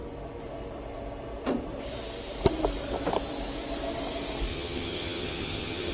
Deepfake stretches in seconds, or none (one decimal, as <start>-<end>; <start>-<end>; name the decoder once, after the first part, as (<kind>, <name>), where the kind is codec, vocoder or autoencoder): 4.5-5.9 (vocoder, HiFi-GAN)